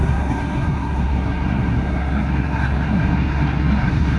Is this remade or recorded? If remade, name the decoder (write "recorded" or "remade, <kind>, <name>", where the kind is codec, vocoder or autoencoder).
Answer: remade, codec, SNAC